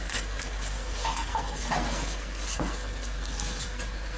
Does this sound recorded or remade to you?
remade